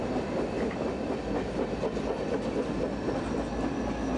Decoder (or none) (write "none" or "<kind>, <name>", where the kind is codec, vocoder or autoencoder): none